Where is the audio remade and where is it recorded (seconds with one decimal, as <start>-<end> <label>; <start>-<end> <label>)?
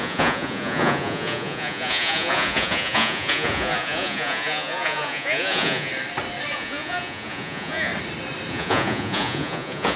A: 0.0-5.9 remade; 5.9-6.5 recorded; 6.5-7.9 remade; 7.9-8.5 recorded; 8.5-10.0 remade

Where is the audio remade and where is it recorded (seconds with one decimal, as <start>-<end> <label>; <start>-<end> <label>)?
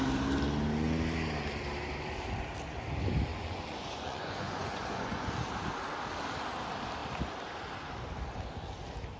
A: 0.0-3.3 recorded; 3.3-5.3 remade; 5.3-9.2 recorded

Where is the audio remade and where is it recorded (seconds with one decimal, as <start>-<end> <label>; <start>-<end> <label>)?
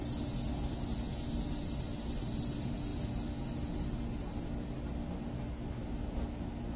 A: 0.0-6.8 recorded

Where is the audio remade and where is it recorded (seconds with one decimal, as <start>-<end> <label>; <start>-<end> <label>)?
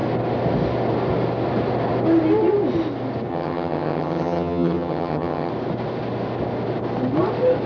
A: 0.0-3.3 recorded; 3.3-5.5 remade; 5.5-7.7 recorded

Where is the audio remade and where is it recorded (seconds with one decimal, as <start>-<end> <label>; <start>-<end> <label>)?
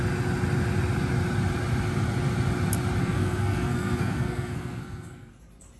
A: 0.0-3.0 recorded; 3.0-5.3 remade; 5.3-5.8 recorded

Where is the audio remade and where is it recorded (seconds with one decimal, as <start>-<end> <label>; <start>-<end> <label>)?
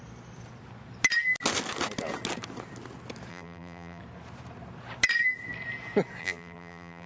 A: 0.0-3.3 recorded; 3.3-4.0 remade; 4.0-6.2 recorded; 6.2-7.1 remade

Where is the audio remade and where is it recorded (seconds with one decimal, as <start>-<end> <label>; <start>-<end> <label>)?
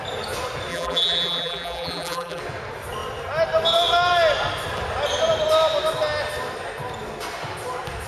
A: 0.0-0.7 recorded; 0.7-2.4 remade; 2.4-8.1 recorded